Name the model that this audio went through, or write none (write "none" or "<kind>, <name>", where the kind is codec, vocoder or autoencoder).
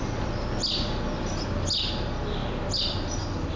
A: none